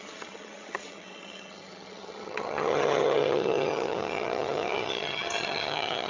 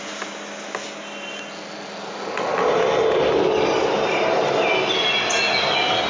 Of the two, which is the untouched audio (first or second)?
second